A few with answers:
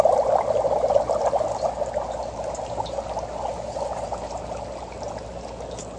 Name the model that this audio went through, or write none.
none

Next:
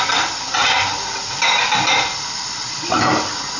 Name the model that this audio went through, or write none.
none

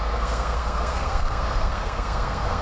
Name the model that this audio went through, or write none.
codec, SNAC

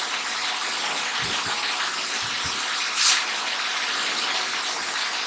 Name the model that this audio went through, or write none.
none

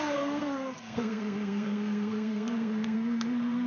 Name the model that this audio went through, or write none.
codec, SNAC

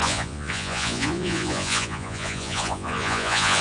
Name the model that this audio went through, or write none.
vocoder, Vocos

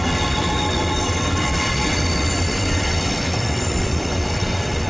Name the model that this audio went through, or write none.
vocoder, WaveNeXt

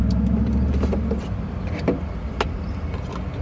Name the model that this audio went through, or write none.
none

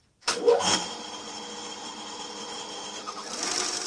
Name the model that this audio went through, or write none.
vocoder, BigVGAN v2